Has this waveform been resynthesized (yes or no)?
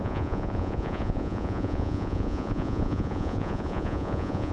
yes